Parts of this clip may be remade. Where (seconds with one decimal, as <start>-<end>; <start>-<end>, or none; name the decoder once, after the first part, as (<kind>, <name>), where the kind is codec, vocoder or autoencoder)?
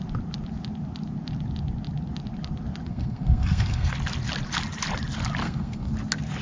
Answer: 2.9-3.9 (codec, SNAC); 5.4-5.9